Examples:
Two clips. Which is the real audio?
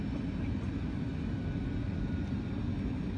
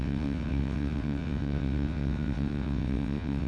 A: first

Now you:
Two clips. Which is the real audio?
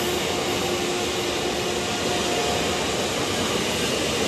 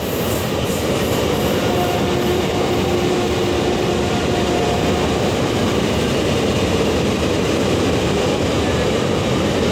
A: first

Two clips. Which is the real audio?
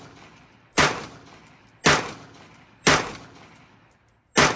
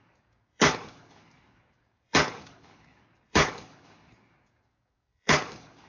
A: first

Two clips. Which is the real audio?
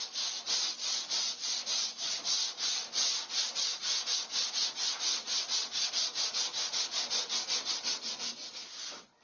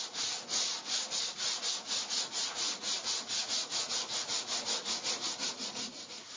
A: first